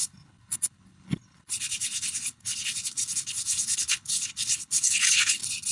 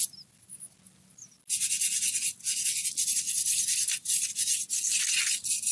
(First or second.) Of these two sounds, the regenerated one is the first